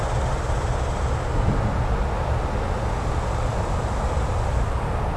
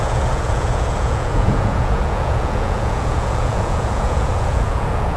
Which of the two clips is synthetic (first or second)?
second